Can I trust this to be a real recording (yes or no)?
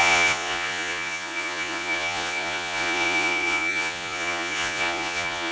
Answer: no